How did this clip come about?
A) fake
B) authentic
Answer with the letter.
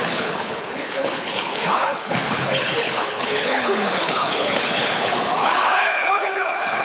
A